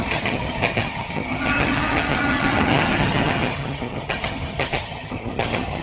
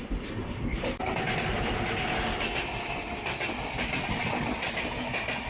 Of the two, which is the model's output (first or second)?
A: first